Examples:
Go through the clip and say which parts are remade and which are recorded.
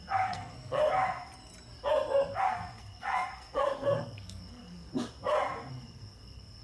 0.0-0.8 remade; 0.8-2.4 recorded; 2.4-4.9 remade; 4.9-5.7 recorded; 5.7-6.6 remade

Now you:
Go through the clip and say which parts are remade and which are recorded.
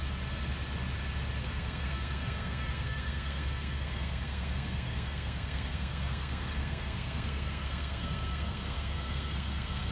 0.0-1.4 recorded; 1.4-9.9 remade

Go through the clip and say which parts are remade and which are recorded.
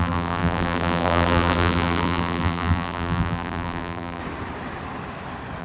0.0-4.2 remade; 4.2-5.6 recorded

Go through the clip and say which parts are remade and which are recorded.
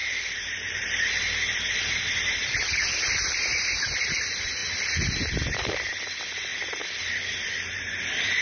0.0-4.6 remade; 4.6-5.3 recorded; 5.3-6.5 remade; 6.5-7.0 recorded; 7.0-8.4 remade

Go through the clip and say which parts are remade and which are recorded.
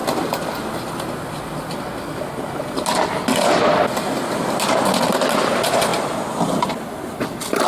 0.0-7.7 recorded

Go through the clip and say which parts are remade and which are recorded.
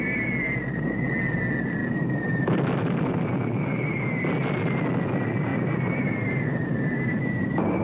0.0-5.5 recorded; 5.5-7.8 remade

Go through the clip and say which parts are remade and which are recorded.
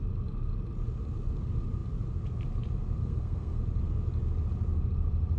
0.0-3.0 recorded; 3.0-3.6 remade; 3.6-5.4 recorded